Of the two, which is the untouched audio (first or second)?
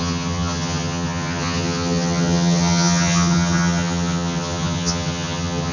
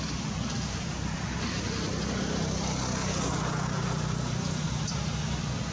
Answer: second